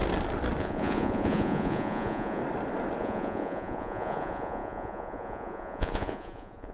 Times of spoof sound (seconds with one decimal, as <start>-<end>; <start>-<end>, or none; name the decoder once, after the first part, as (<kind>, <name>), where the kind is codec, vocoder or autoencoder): 0.6-2.4 (vocoder, Vocos); 3.0-6.7